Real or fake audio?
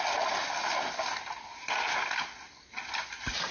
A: real